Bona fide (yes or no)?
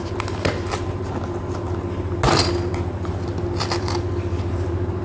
yes